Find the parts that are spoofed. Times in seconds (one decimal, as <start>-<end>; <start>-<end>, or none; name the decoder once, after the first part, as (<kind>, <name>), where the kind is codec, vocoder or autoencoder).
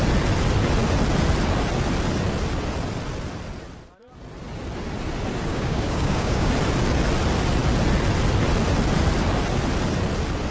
5.5-6.5 (codec, DAC)